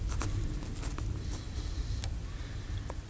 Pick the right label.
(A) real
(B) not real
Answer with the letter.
A